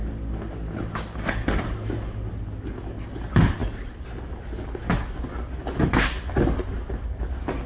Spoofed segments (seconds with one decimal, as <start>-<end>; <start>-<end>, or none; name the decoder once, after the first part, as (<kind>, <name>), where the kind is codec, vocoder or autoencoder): none